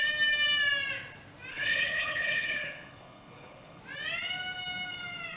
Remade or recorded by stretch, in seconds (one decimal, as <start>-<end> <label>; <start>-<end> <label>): 0.0-1.5 recorded; 1.5-3.8 remade; 3.8-5.4 recorded